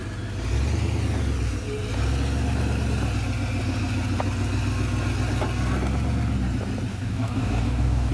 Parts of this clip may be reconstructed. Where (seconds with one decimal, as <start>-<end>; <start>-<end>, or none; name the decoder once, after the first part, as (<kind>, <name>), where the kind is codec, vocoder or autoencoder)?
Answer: 6.9-8.1 (codec, DAC)